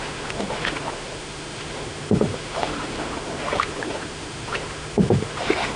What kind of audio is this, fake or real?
fake